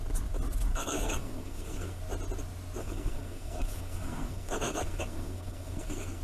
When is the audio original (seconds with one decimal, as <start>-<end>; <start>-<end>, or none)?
0.0-0.7; 2.0-2.8